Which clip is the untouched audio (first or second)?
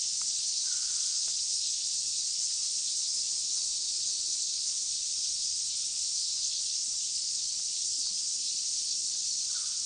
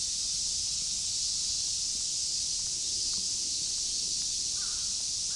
second